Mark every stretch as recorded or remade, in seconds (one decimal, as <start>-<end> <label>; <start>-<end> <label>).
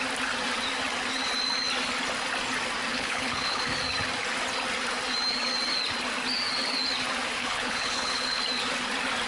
0.0-2.9 recorded; 2.9-3.6 remade; 3.6-7.4 recorded; 7.4-8.4 remade; 8.4-9.3 recorded